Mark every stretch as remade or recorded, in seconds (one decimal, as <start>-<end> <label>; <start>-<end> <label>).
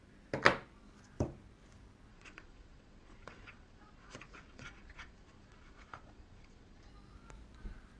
0.0-2.1 recorded; 2.1-6.9 remade; 6.9-8.0 recorded